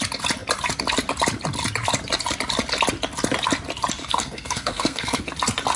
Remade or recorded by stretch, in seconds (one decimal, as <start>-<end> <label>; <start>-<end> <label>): 0.0-4.0 recorded; 4.0-5.2 remade; 5.2-5.8 recorded